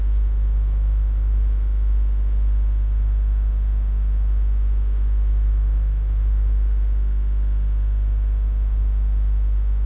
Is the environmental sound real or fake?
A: fake